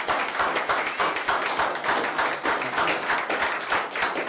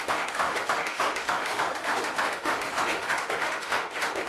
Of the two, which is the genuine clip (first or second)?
first